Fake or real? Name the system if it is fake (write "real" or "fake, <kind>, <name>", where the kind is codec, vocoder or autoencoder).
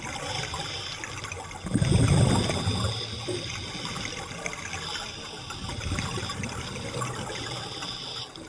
real